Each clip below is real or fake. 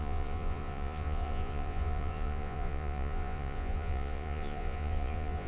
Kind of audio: fake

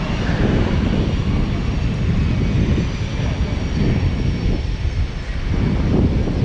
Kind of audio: real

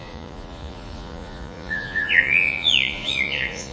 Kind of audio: fake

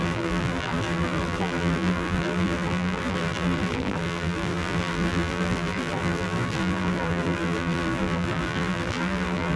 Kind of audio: fake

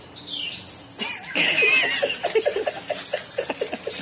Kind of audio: real